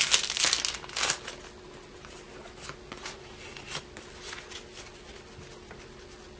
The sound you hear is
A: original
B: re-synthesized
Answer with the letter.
A